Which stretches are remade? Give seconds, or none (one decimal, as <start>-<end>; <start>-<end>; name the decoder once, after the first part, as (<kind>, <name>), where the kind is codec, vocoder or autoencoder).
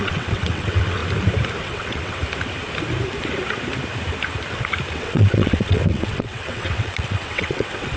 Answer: 0.0-1.0 (vocoder, WaveNeXt); 1.6-2.2; 4.9-8.0